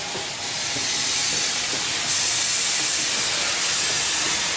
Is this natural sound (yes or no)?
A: yes